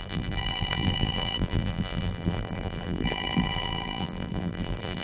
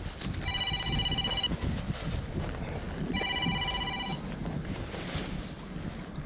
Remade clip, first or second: first